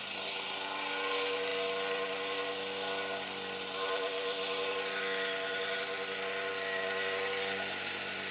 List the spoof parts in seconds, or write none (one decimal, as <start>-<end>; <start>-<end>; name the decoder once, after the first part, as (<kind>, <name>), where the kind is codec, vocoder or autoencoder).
none